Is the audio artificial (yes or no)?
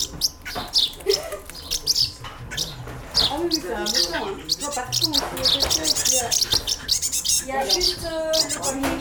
no